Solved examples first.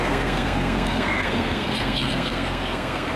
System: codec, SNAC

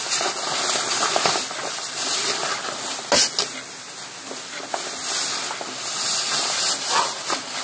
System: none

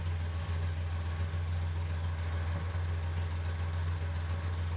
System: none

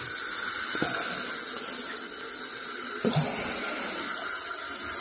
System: none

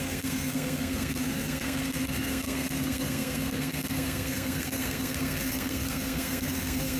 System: codec, SNAC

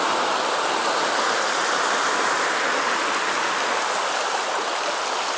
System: none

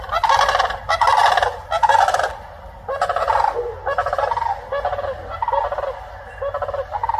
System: none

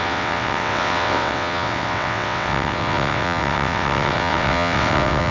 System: vocoder, WaveNeXt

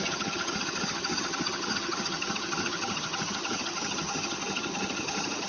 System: vocoder, HiFi-GAN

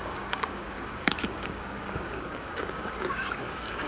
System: codec, DAC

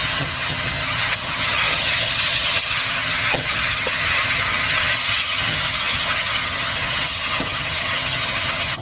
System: vocoder, HiFi-GAN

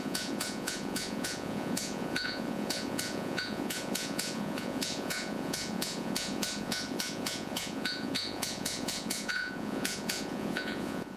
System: vocoder, Vocos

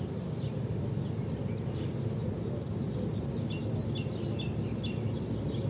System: none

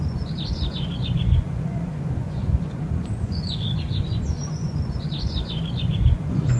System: vocoder, Vocos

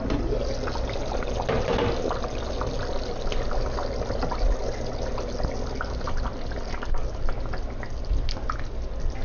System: none